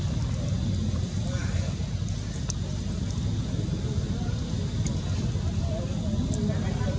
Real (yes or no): yes